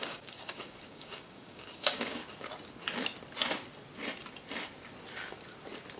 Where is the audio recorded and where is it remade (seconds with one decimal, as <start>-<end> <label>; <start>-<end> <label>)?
0.0-2.2 remade; 2.2-6.0 recorded